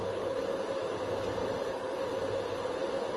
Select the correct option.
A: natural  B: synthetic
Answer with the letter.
A